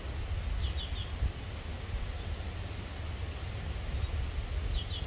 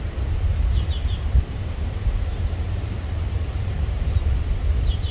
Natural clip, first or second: first